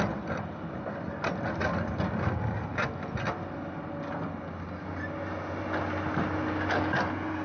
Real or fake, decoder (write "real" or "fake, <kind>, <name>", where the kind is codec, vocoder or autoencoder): real